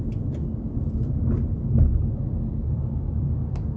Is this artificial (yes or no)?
no